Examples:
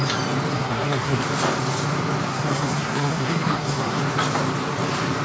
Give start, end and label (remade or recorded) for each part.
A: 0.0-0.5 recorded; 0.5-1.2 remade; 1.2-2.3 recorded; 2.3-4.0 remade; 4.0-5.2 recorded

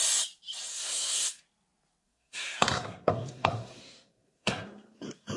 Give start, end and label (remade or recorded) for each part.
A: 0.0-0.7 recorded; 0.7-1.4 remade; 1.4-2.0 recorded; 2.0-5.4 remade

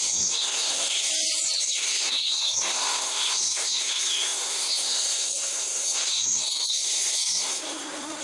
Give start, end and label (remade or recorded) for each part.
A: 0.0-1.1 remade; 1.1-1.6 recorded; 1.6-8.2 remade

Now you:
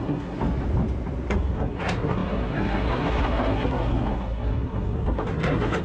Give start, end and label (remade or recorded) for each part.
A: 0.0-0.4 remade; 0.4-1.3 recorded; 1.3-5.8 remade

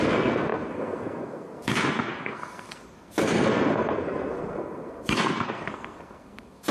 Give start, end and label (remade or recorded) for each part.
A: 0.0-6.7 remade

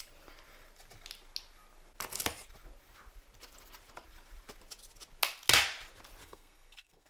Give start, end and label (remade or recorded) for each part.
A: 0.0-6.2 recorded; 6.2-7.1 remade